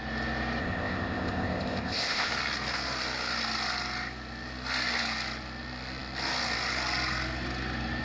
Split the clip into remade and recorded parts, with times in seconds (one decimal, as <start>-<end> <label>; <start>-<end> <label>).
0.0-0.6 recorded; 0.6-2.3 remade; 2.3-8.0 recorded